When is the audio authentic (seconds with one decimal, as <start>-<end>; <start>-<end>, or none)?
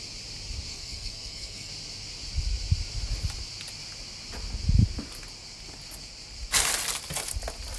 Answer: 0.0-0.7; 1.7-7.8